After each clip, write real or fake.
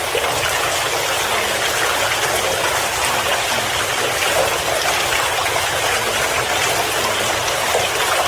real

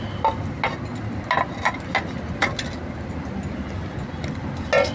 real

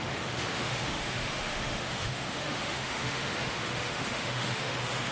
fake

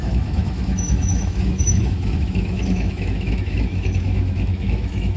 fake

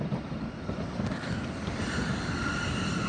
real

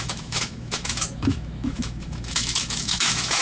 fake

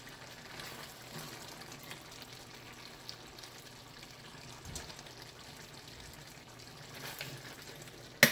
real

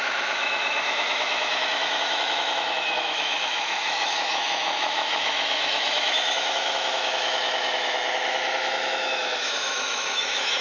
fake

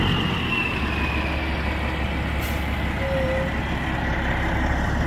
real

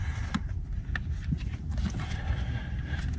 real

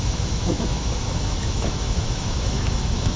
fake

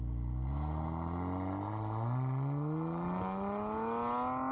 real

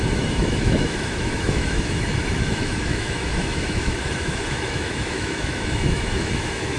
fake